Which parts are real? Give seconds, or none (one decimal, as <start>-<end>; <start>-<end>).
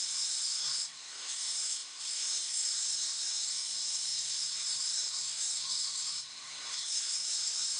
none